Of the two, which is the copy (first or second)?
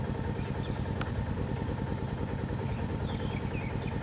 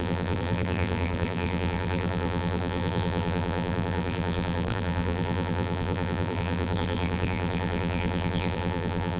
second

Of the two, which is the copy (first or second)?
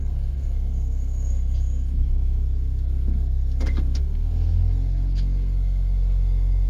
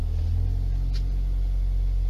first